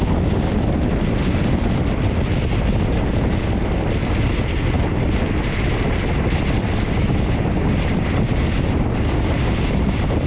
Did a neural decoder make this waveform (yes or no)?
no